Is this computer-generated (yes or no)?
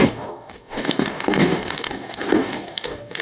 yes